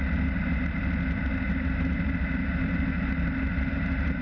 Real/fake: real